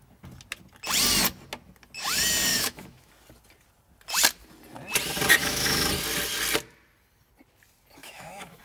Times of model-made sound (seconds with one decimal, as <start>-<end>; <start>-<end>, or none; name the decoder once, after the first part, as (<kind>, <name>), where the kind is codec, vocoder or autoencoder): 2.5-3.1 (autoencoder, DAC-VAE); 5.4-5.9; 8.0-8.6